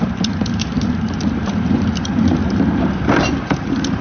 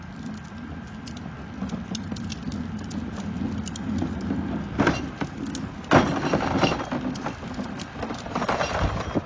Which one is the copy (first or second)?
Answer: first